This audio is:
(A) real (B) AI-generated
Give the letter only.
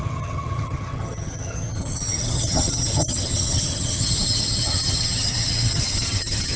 B